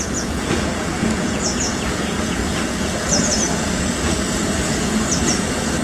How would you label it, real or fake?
fake